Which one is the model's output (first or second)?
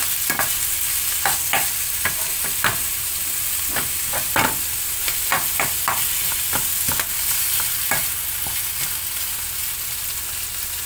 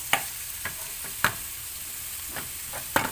second